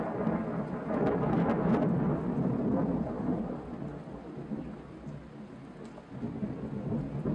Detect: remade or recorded recorded